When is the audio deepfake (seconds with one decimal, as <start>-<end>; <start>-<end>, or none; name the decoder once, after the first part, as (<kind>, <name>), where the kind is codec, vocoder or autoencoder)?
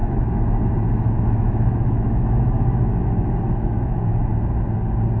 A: 0.0-4.3 (autoencoder, DAC-VAE)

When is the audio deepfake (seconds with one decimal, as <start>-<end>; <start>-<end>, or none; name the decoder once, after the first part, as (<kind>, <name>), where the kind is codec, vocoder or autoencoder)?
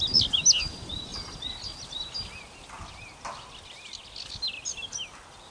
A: none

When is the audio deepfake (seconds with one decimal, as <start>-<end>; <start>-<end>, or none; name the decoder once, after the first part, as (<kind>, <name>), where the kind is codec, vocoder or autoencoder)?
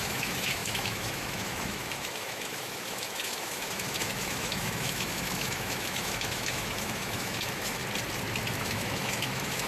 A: 0.0-7.8 (autoencoder, DAC-VAE); 8.6-9.7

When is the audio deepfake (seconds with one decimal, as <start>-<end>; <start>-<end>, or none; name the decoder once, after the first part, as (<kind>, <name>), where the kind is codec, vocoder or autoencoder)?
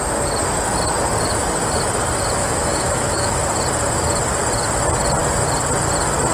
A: 2.4-3.3 (autoencoder, DAC-VAE)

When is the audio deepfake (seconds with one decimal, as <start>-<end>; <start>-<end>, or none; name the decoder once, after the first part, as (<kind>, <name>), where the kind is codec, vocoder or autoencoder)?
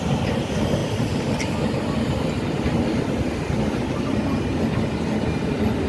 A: none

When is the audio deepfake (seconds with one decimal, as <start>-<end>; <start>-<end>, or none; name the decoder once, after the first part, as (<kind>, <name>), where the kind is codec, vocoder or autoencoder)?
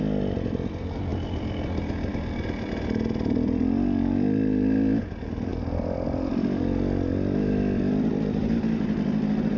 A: none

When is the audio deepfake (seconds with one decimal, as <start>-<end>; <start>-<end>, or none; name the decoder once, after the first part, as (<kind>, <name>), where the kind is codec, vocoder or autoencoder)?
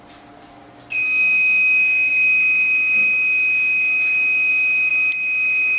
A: 1.0-2.1 (autoencoder, DAC-VAE)